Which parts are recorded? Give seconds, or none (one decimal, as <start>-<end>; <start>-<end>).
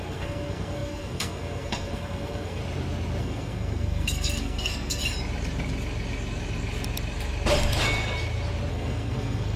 2.6-3.2; 5.0-8.7